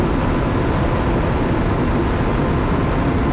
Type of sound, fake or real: real